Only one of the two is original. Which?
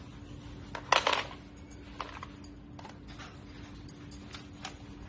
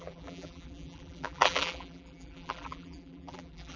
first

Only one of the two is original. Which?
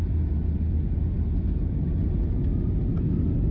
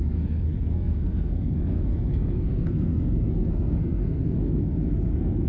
first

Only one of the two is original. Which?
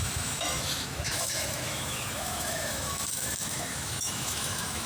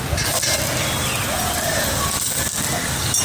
second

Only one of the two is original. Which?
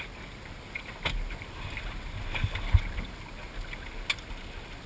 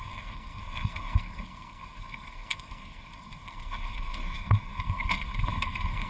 first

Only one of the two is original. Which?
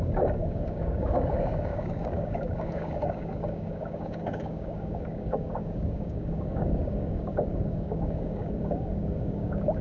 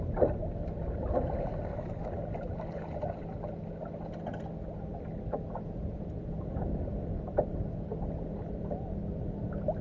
second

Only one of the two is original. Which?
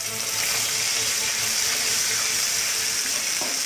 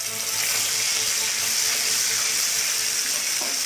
second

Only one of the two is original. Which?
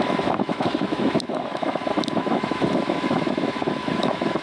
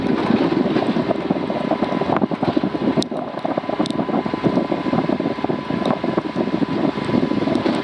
second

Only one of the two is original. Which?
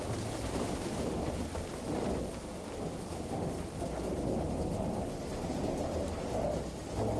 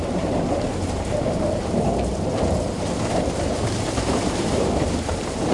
first